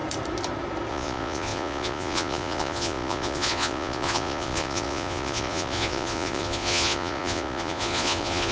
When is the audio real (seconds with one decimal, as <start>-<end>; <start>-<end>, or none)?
0.0-0.9